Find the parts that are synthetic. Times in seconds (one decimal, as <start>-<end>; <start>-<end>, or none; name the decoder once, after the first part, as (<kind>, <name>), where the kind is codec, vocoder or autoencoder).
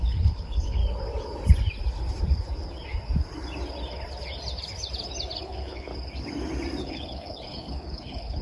0.0-0.8 (codec, HILCodec); 5.4-5.9; 6.8-8.4